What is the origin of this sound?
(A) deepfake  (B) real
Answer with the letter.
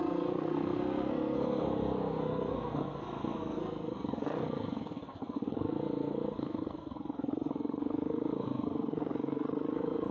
A